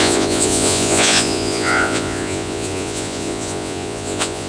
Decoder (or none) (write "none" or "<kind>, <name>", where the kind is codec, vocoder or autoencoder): vocoder, Vocos